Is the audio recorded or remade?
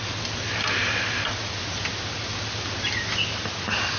recorded